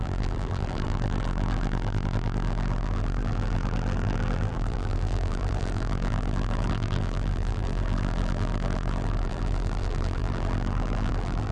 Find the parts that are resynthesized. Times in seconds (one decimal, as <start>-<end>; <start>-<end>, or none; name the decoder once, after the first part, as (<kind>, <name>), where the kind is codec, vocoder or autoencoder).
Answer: 0.0-11.5 (vocoder, BigVGAN v2)